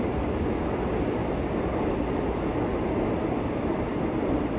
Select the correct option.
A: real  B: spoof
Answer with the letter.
A